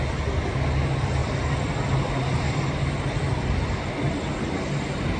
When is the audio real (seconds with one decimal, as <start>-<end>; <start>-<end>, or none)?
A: 0.0-1.2; 4.3-5.2